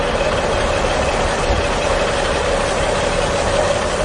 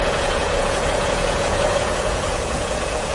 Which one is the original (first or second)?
first